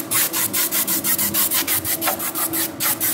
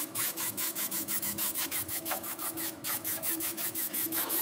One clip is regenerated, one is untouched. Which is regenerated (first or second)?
second